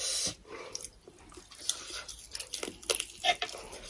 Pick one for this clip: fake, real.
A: real